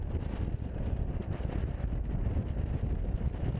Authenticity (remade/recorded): recorded